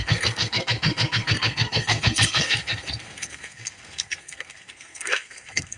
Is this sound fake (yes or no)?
yes